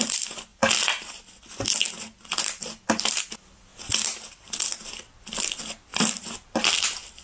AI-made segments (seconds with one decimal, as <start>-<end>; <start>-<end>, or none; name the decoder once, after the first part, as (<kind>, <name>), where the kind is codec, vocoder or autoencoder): 5.9-6.8 (vocoder, BigVGAN v2)

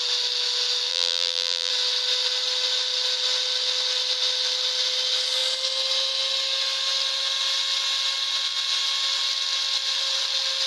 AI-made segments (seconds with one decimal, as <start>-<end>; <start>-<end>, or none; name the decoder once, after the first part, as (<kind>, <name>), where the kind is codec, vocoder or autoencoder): 0.9-1.7 (vocoder, BigVGAN v2)